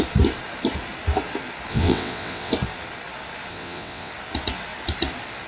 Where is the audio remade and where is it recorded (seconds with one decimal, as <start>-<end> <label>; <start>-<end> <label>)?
0.0-1.7 recorded; 1.7-2.5 remade; 2.5-3.5 recorded; 3.5-4.1 remade; 4.1-5.5 recorded